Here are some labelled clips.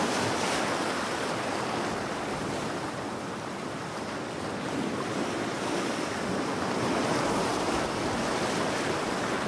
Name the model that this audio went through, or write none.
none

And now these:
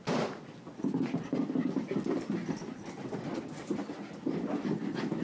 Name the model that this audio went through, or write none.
none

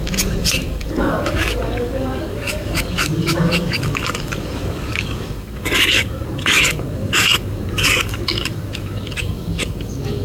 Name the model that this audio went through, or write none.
codec, DAC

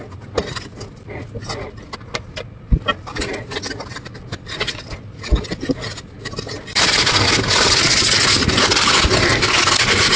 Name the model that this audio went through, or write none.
none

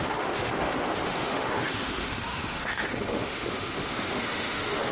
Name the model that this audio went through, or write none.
autoencoder, DAC-VAE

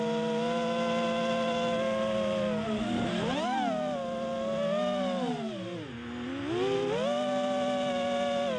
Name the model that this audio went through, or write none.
none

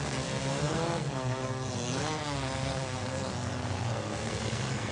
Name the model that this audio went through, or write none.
codec, SNAC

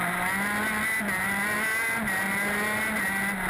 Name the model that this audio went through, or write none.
none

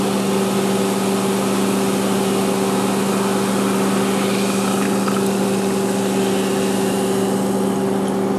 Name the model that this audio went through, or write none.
none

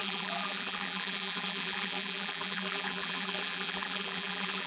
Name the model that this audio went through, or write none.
vocoder, BigVGAN v2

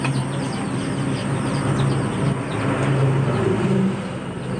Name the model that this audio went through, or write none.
none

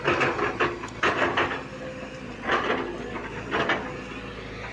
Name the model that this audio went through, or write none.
none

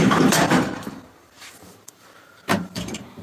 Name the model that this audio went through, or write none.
vocoder, BigVGAN v2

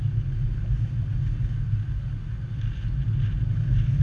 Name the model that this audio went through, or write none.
none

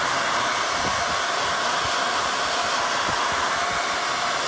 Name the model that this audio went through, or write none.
none